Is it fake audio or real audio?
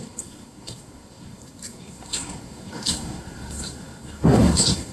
fake